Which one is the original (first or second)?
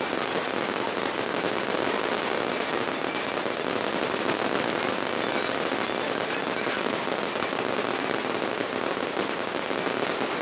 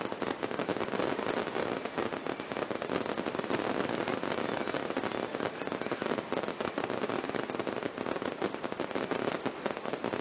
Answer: first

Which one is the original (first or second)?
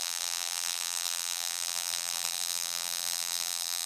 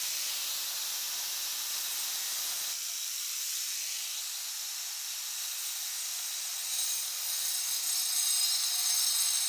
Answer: second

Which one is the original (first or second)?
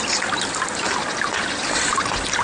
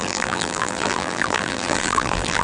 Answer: first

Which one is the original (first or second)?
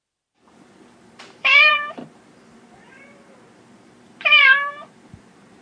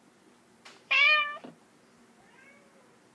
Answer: second